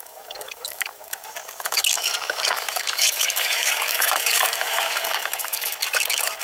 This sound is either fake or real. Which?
fake